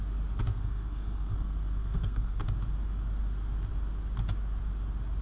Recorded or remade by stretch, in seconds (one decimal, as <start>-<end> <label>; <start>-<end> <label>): 0.0-0.5 recorded; 0.5-2.4 remade; 2.4-5.2 recorded